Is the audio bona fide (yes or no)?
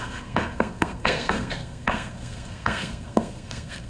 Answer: no